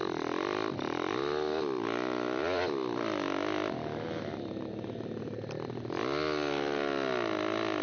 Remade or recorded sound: recorded